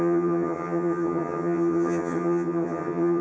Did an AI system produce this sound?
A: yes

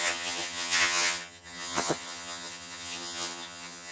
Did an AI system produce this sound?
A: yes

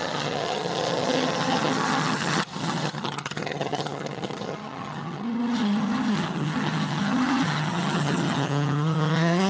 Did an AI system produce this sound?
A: yes